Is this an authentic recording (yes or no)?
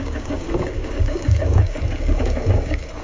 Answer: no